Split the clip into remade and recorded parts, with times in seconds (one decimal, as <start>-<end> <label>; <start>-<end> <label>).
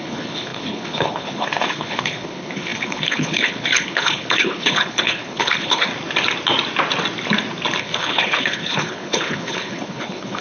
0.0-5.9 remade; 5.9-7.8 recorded; 7.8-10.4 remade